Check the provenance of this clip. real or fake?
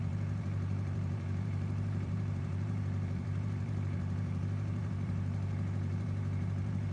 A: fake